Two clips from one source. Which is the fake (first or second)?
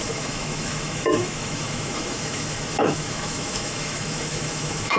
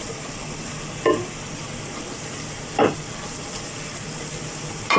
first